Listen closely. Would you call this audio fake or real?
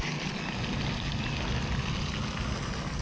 real